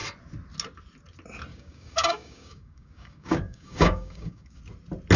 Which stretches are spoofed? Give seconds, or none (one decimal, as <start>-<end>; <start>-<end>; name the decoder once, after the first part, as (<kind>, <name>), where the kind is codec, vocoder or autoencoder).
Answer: 1.5-4.6 (codec, DAC)